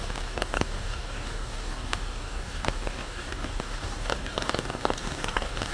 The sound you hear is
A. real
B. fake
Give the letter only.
B